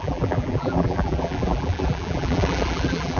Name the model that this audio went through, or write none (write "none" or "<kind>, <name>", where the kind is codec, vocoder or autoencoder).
vocoder, BigVGAN v2